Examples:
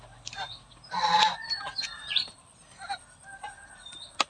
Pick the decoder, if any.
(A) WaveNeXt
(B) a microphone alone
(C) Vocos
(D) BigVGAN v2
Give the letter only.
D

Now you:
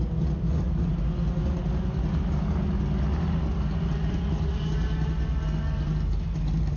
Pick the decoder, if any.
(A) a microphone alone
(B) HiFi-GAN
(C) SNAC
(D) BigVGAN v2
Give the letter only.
A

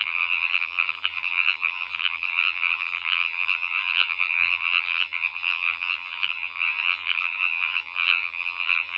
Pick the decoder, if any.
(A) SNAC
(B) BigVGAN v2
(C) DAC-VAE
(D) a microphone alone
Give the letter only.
B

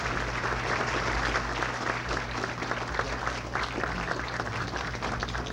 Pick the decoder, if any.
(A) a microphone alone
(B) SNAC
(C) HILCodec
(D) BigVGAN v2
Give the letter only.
A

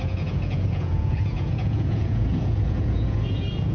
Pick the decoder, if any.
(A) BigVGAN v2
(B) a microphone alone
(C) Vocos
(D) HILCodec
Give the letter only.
C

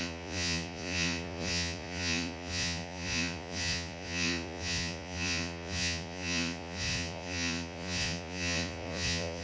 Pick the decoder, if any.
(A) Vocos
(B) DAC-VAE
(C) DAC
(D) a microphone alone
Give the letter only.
A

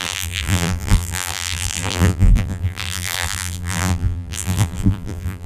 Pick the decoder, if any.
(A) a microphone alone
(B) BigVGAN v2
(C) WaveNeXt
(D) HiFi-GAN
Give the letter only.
B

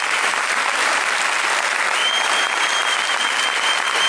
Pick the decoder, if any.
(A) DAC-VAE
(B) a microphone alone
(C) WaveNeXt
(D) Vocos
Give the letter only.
B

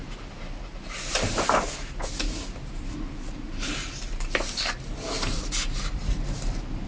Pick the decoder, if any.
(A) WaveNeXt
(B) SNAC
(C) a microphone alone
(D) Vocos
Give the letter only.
C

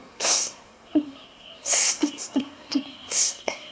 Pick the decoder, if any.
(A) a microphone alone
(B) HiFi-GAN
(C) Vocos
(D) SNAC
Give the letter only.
D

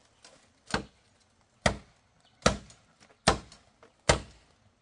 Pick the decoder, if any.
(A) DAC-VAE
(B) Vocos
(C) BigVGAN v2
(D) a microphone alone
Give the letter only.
D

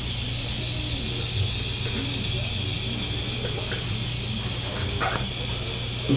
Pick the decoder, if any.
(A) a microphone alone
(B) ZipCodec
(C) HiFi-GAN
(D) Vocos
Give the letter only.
A